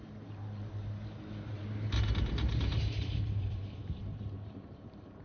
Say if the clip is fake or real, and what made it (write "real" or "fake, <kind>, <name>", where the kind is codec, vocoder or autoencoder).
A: fake, vocoder, BigVGAN v2